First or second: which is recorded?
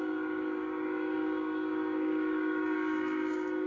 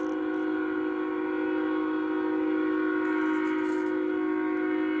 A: second